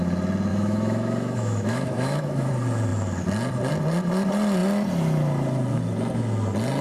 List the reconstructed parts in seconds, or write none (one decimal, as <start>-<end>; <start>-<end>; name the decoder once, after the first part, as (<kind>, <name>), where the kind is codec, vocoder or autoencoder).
0.5-2.5 (autoencoder, DAC-VAE)